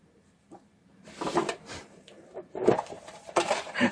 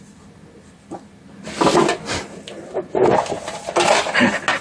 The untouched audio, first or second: second